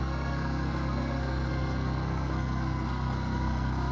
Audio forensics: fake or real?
fake